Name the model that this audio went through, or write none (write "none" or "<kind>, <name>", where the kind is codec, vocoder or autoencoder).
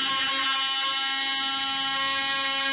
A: none